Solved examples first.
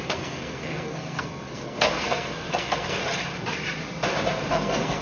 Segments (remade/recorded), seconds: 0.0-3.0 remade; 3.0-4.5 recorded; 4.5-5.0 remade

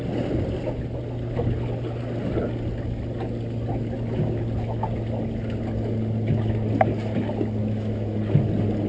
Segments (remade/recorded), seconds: 0.0-7.6 recorded; 7.6-8.2 remade; 8.2-8.9 recorded